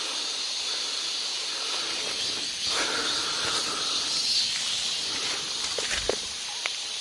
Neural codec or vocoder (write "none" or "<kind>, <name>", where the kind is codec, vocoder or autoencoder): vocoder, BigVGAN v2